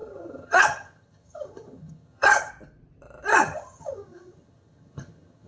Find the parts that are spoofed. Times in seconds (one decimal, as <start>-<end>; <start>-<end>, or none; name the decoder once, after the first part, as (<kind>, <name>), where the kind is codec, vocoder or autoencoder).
0.0-2.5 (vocoder, HiFi-GAN); 3.3-5.5